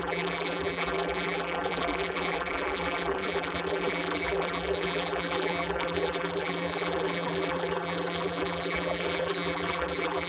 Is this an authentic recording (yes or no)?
no